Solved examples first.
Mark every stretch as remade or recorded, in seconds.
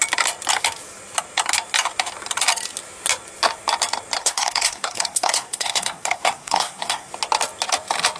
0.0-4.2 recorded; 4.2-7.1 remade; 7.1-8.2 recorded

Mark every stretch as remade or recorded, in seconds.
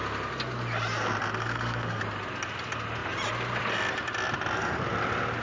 0.0-1.4 recorded; 1.4-2.0 remade; 2.0-5.4 recorded